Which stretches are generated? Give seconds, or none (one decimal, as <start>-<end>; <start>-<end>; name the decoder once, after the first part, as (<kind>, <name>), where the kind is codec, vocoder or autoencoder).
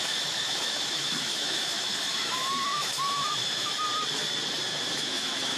0.0-3.7 (autoencoder, DAC-VAE); 4.9-5.6